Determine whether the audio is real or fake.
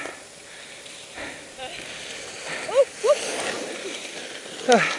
real